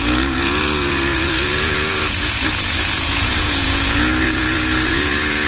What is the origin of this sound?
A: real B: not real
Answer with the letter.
B